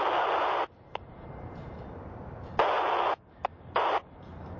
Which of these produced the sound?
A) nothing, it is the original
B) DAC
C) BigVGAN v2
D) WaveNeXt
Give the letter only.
A